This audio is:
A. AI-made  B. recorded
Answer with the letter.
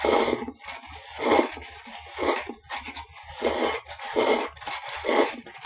B